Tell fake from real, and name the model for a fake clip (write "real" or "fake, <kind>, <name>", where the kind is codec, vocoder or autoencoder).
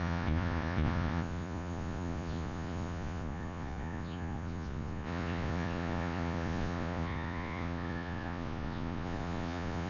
fake, vocoder, Vocos